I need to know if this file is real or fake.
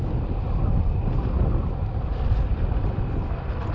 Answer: real